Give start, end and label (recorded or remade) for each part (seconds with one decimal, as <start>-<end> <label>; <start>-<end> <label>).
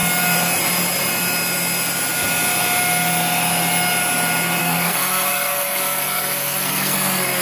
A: 0.0-4.6 recorded; 4.6-7.4 remade